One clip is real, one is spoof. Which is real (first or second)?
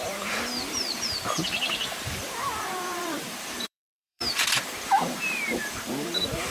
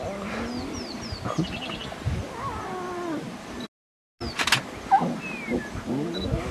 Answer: second